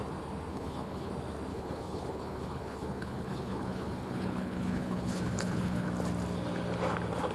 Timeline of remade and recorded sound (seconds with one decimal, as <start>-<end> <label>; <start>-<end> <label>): 0.0-0.5 recorded; 0.5-1.1 remade; 1.1-1.5 recorded; 1.5-5.9 remade; 5.9-7.3 recorded